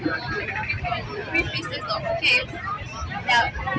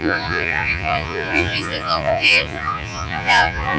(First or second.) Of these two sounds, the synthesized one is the second